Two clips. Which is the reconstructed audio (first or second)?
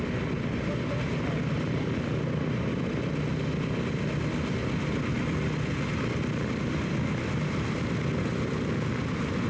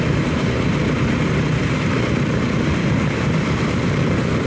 second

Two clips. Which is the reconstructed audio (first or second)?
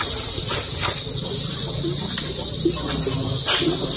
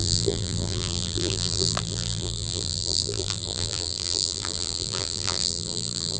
second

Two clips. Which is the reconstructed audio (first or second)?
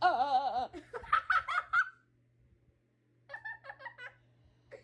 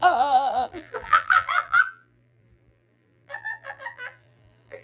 second